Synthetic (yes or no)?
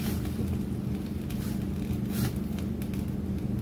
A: no